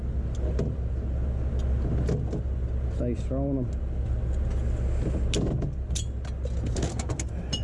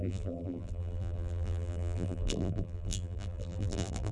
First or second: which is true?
first